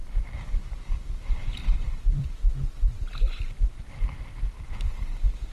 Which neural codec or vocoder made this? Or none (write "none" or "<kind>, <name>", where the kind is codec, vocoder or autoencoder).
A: vocoder, BigVGAN v2